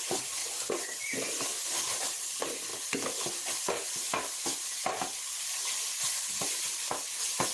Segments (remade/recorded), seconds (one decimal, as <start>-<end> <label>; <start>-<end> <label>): 0.0-4.1 recorded; 4.1-5.2 remade; 5.2-7.5 recorded